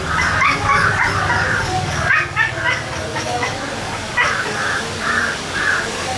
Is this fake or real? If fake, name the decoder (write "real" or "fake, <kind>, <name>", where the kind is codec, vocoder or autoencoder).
fake, codec, DAC